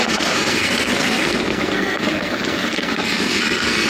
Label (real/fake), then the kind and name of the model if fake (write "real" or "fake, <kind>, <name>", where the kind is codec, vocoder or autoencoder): fake, codec, SNAC